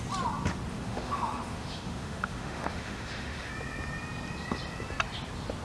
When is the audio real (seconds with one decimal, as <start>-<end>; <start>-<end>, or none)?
0.0-0.7; 3.5-5.6